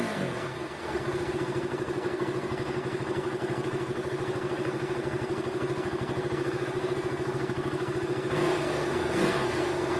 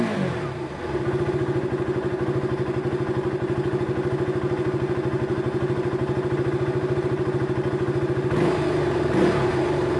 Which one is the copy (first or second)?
first